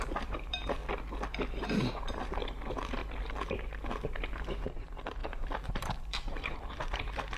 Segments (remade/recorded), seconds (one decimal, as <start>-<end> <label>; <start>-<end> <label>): 0.0-0.8 remade; 0.8-1.9 recorded; 1.9-3.0 remade; 3.0-3.9 recorded; 3.9-7.4 remade

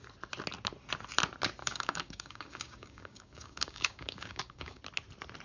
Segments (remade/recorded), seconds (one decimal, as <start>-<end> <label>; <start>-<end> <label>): 0.0-1.6 recorded; 1.6-4.8 remade; 4.8-5.4 recorded

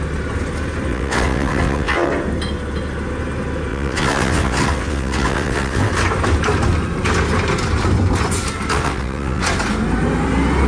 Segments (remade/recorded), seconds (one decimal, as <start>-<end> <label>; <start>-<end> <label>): 0.0-0.9 recorded; 0.9-2.1 remade; 2.1-3.7 recorded; 3.7-5.9 remade; 5.9-8.7 recorded; 8.7-9.4 remade; 9.4-10.7 recorded

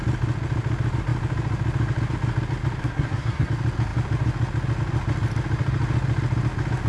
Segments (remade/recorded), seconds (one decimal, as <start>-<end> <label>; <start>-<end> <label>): 0.0-2.8 recorded; 2.8-3.5 remade; 3.5-6.9 recorded

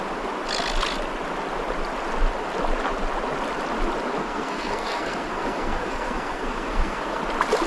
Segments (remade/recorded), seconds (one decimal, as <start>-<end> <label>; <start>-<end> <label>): 0.0-4.2 recorded; 4.2-7.2 remade; 7.2-7.7 recorded

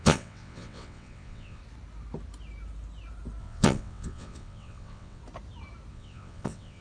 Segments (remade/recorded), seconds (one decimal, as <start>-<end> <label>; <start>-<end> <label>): 0.0-1.6 remade; 1.6-3.4 recorded; 3.4-5.2 remade; 5.2-5.9 recorded; 5.9-6.8 remade

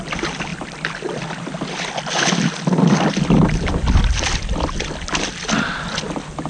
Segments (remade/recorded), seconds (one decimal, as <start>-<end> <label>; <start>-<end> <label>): 0.0-6.5 recorded